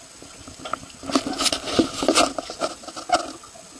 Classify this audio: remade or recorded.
recorded